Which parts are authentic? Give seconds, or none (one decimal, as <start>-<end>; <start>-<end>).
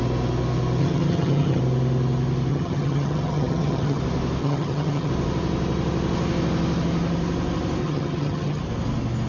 0.0-0.8; 1.6-2.5; 4.0-4.4; 5.1-7.8; 8.6-9.3